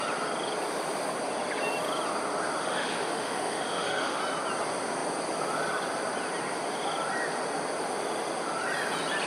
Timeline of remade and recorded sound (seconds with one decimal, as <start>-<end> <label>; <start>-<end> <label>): 0.0-2.6 recorded; 2.6-4.2 remade; 4.2-9.3 recorded